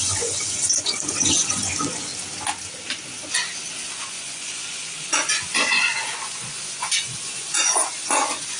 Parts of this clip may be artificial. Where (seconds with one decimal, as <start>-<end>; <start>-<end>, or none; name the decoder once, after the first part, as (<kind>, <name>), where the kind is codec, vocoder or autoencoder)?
0.0-2.1 (vocoder, Vocos); 3.9-8.6

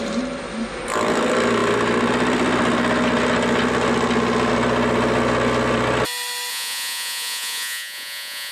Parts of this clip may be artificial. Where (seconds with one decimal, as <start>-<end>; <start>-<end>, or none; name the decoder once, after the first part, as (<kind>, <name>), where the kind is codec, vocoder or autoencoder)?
6.5-8.5 (vocoder, Vocos)

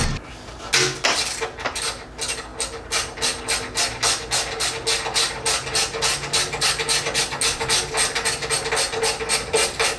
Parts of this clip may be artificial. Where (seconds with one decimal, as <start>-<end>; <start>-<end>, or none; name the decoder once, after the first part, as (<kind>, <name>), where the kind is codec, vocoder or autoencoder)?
none

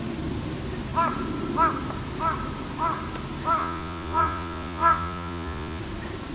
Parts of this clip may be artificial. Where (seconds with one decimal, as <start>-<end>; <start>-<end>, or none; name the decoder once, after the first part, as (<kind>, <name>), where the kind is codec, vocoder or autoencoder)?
3.6-5.8 (vocoder, Vocos)

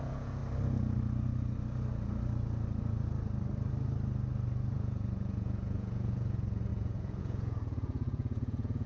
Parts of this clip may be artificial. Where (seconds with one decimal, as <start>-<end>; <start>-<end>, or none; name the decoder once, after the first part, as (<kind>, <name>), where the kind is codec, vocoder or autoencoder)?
0.0-0.4 (vocoder, Vocos); 4.7-8.9